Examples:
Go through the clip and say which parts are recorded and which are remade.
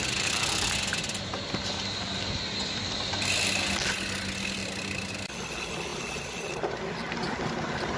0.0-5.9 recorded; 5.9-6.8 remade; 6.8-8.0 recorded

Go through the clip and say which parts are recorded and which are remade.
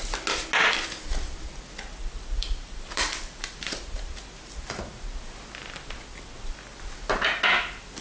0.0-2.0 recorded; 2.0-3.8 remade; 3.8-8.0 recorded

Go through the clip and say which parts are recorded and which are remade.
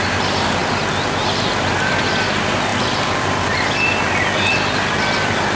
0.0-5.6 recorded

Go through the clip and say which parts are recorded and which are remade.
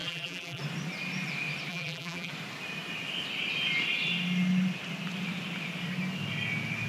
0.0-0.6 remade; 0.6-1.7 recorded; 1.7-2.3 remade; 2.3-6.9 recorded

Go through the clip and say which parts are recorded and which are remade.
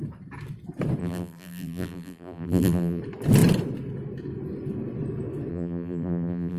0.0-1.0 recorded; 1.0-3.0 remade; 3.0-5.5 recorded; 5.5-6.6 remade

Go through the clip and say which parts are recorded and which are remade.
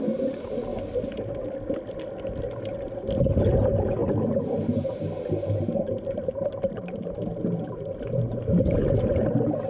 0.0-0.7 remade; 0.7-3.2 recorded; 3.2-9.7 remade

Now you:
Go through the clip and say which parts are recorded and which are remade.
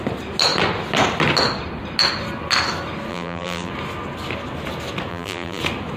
0.0-3.1 recorded; 3.1-3.7 remade; 3.7-5.1 recorded; 5.1-5.6 remade; 5.6-6.0 recorded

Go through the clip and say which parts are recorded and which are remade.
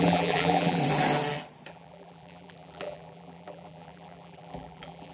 0.0-0.8 remade; 0.8-1.7 recorded; 1.7-5.1 remade